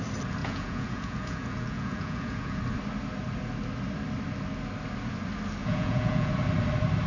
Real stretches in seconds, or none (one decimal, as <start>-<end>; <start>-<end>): 0.0-0.4; 2.6-5.6; 6.3-7.1